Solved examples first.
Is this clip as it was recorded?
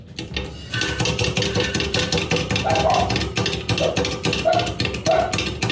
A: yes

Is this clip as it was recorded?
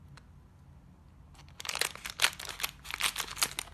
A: yes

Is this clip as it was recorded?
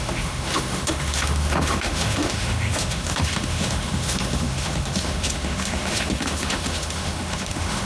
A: no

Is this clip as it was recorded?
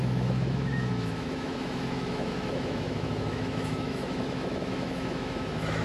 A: no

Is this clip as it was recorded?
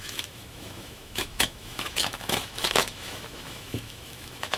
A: no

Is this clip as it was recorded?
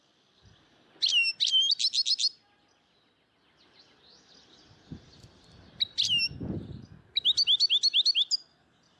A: yes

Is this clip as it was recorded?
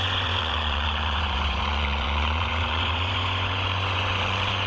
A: no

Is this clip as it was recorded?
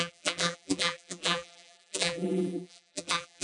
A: no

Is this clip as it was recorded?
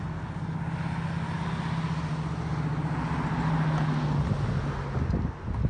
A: yes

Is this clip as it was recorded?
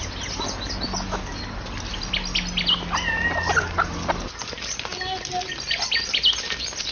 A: yes